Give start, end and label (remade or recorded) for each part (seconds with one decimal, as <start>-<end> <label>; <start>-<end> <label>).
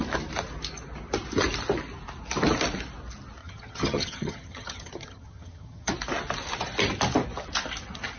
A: 0.0-3.4 recorded; 3.4-5.9 remade; 5.9-8.2 recorded